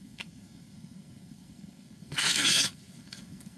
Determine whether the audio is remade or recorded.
remade